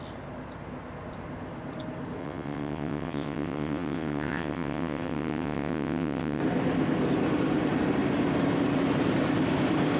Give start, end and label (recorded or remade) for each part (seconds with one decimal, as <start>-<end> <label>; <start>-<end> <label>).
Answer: 0.0-2.2 recorded; 2.2-6.4 remade; 6.4-10.0 recorded